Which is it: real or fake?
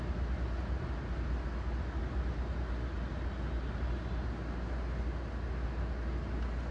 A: real